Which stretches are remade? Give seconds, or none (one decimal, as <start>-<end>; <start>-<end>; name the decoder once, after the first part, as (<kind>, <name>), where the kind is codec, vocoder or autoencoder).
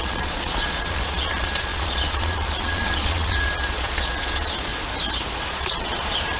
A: 0.0-4.7 (vocoder, Vocos); 5.5-6.4